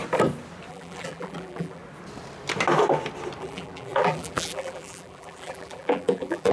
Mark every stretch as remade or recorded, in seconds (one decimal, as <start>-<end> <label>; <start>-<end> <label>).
0.0-0.7 recorded; 0.7-1.8 remade; 1.8-3.4 recorded; 3.4-6.5 remade